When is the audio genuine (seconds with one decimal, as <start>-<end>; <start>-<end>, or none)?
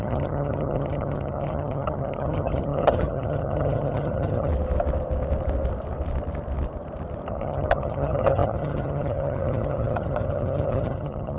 4.5-7.3